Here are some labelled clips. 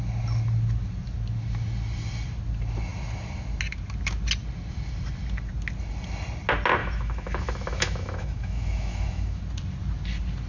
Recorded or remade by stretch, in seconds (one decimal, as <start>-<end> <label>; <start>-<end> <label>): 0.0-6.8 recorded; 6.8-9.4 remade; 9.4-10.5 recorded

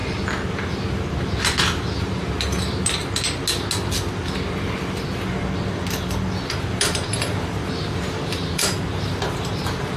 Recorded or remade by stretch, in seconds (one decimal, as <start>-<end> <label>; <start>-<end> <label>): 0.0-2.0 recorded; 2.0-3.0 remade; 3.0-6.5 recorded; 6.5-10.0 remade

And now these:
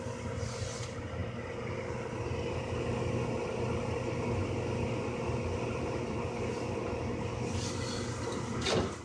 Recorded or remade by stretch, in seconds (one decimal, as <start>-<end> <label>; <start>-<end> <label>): 0.0-9.0 recorded

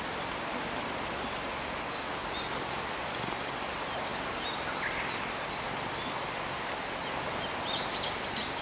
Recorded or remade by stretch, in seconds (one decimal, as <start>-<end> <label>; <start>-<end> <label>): 0.0-8.6 recorded